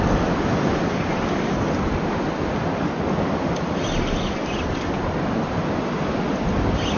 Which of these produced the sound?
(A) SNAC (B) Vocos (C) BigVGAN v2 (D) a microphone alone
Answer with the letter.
D